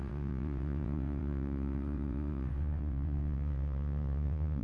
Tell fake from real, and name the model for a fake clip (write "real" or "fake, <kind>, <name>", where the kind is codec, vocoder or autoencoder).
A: fake, vocoder, WaveNeXt